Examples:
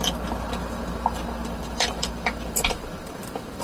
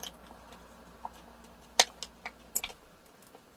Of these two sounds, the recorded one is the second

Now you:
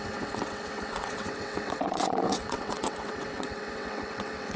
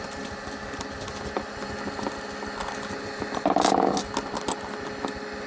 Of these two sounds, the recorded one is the second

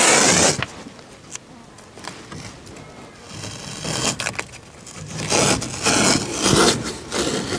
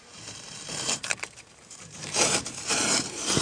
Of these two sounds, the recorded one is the first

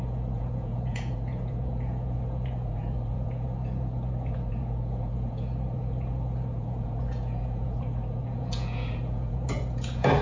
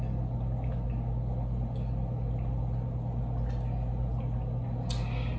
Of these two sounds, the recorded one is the second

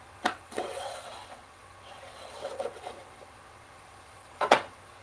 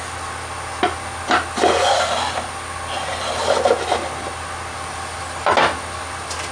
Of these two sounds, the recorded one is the second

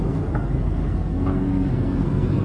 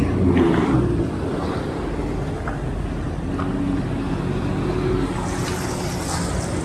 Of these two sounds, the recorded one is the second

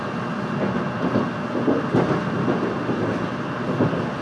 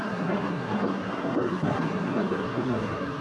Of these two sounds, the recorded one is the first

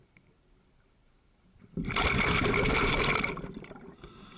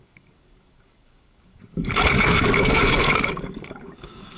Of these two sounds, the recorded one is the first